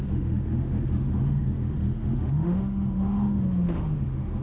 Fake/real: fake